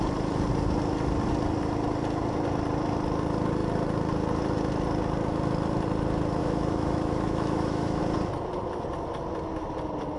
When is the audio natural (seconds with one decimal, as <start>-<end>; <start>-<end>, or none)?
0.0-6.4; 8.0-10.2